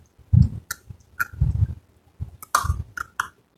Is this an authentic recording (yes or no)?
yes